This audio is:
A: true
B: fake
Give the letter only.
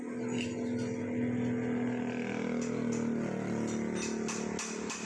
A